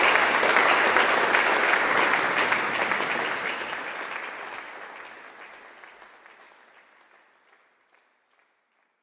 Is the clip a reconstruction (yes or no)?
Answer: no